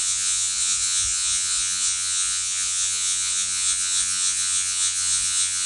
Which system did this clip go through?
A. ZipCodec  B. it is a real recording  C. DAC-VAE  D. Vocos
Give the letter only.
D